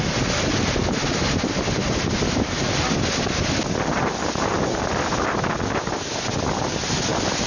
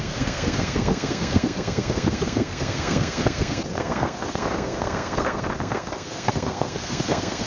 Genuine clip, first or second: first